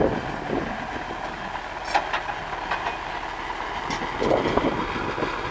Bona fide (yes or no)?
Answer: yes